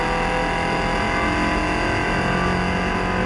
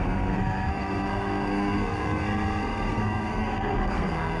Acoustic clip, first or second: first